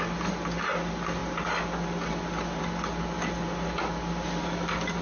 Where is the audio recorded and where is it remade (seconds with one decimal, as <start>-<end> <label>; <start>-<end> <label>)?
0.0-5.0 recorded